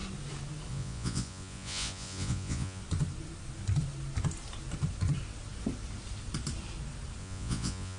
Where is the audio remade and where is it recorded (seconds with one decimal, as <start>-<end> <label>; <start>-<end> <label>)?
0.0-0.7 recorded; 0.7-2.8 remade; 2.8-7.2 recorded; 7.2-8.0 remade